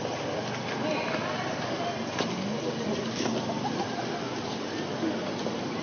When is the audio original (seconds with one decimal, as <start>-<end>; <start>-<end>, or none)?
0.0-5.8